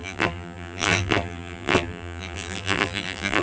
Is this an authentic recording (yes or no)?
no